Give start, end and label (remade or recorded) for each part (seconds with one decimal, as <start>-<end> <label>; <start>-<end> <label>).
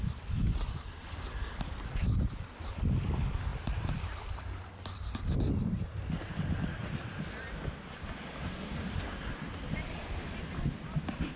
0.0-11.4 recorded